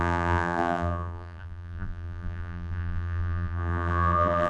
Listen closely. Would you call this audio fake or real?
fake